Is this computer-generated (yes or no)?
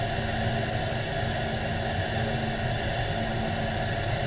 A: no